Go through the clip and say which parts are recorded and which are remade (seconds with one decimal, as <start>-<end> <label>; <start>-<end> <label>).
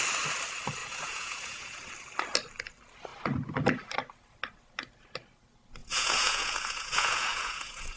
0.0-0.8 recorded; 0.8-1.9 remade; 1.9-5.8 recorded; 5.8-8.0 remade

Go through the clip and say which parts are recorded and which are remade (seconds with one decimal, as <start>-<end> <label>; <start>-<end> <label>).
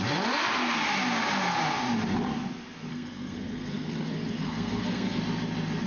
0.0-2.9 recorded; 2.9-5.2 remade; 5.2-5.9 recorded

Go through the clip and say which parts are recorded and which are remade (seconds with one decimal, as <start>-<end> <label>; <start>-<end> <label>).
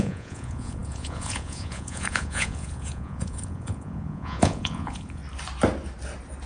0.0-5.2 remade; 5.2-6.5 recorded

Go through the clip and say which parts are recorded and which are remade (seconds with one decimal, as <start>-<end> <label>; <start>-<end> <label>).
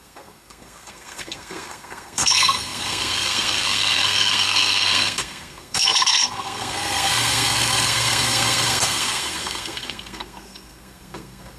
0.0-11.6 remade